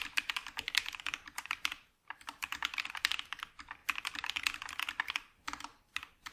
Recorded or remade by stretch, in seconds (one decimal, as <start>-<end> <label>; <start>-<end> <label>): 0.0-6.3 recorded